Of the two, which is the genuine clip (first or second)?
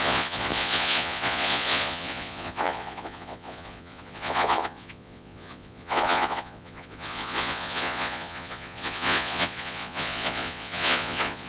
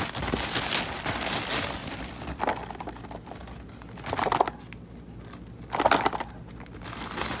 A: second